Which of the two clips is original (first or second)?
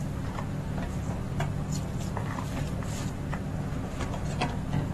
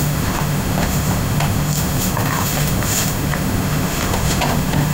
first